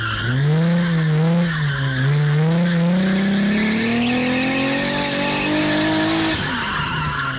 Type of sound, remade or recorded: recorded